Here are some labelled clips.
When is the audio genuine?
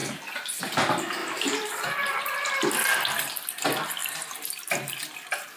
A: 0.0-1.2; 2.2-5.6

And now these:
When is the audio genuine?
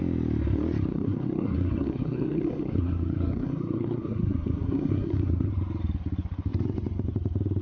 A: 0.0-0.9; 5.5-7.6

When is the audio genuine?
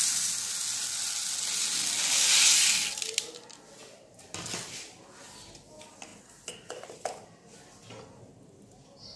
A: 0.0-9.2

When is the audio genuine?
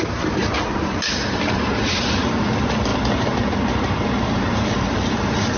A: 2.9-4.3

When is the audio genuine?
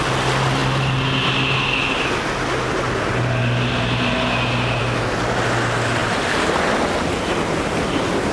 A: 0.0-8.3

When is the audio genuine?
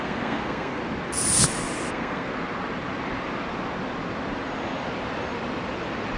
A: 0.8-1.9; 2.3-6.2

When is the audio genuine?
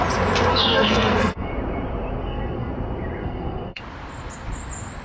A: 0.0-0.5; 1.5-2.2; 2.7-3.2; 3.8-5.0